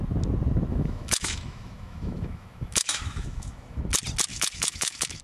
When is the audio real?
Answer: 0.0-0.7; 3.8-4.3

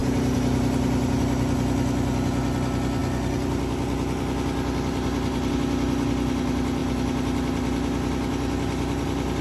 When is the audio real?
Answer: 1.2-9.4